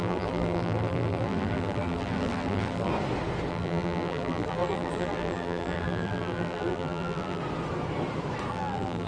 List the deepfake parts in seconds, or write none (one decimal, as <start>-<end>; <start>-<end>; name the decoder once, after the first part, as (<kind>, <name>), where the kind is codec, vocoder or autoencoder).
0.0-2.9 (vocoder, BigVGAN v2); 3.5-7.4; 8.5-9.1